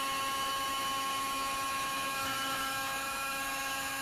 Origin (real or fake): fake